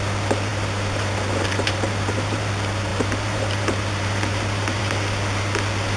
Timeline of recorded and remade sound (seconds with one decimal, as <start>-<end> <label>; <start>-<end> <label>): 0.0-0.5 recorded; 0.5-2.5 remade; 2.5-2.9 recorded; 2.9-4.8 remade; 4.8-6.0 recorded